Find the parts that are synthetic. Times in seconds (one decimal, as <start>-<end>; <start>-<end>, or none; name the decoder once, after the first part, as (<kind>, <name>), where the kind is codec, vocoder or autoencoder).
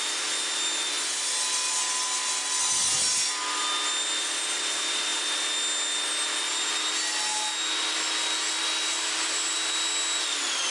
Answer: none